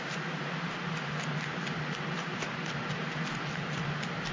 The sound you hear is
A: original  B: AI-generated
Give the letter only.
A